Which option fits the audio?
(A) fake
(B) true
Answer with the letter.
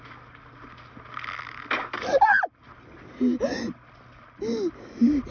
B